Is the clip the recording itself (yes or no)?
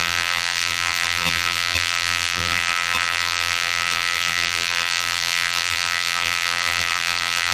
no